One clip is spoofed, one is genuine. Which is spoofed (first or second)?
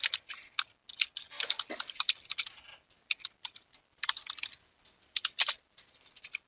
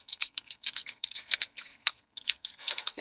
second